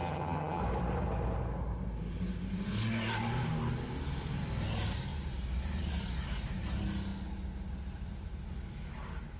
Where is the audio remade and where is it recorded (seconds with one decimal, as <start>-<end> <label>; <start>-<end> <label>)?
0.0-0.6 remade; 0.6-9.4 recorded